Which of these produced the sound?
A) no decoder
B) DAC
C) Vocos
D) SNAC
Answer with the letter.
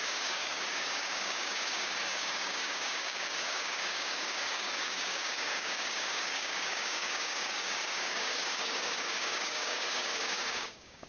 B